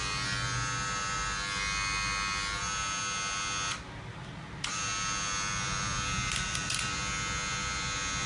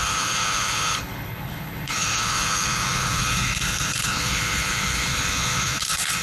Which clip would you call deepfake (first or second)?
second